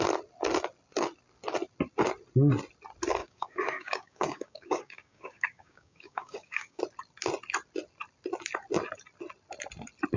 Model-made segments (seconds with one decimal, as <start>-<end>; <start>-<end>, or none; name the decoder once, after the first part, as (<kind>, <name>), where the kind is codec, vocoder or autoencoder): 3.2-6.8 (codec, DAC)